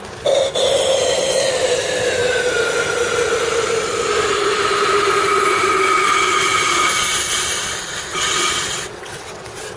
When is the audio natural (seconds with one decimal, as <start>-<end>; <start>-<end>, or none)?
0.0-8.1